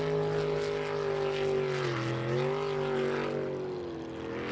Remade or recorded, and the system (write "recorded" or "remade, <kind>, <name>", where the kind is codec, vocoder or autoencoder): recorded